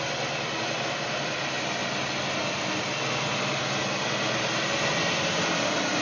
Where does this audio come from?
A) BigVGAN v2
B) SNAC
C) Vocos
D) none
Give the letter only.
D